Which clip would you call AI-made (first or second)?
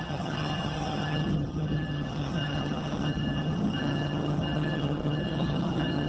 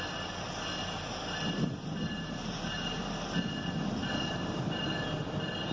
first